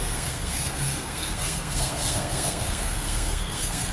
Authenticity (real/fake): fake